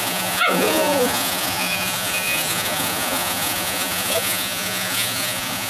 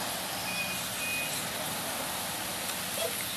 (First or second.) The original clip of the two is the second